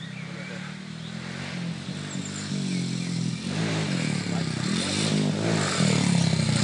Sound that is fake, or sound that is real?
real